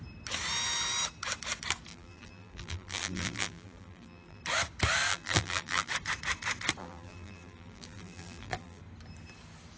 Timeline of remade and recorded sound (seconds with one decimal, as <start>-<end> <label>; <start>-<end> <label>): 0.0-1.9 recorded; 1.9-4.4 remade; 4.4-5.1 recorded; 5.1-5.9 remade; 5.9-6.8 recorded; 6.8-8.8 remade; 8.8-9.8 recorded